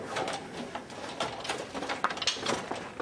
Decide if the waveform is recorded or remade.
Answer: recorded